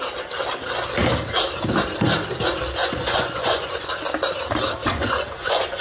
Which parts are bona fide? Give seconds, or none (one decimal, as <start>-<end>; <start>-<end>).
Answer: 0.0-2.8; 3.9-4.8